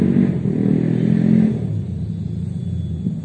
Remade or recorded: recorded